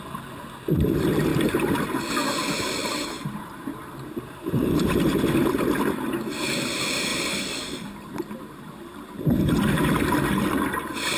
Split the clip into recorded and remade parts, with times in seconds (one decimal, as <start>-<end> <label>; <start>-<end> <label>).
0.0-1.3 recorded; 1.3-2.0 remade; 2.0-2.8 recorded; 2.8-5.2 remade; 5.2-7.1 recorded; 7.1-8.2 remade; 8.2-11.2 recorded